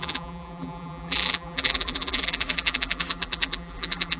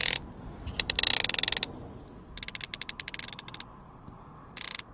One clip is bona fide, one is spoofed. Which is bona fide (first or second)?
second